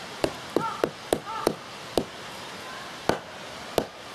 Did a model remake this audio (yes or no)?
no